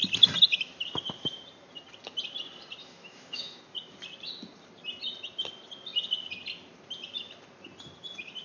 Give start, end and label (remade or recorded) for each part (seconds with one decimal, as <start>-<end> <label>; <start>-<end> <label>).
0.0-2.8 recorded; 2.8-3.6 remade; 3.6-8.4 recorded